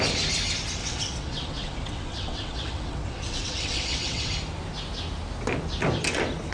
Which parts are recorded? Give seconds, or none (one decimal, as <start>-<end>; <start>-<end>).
0.0-0.8; 4.3-6.5